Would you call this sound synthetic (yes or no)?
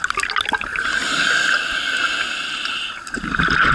no